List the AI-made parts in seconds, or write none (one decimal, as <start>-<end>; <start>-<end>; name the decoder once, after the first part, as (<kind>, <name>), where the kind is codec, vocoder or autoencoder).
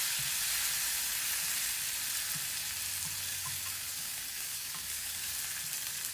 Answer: 3.3-5.3 (codec, DAC)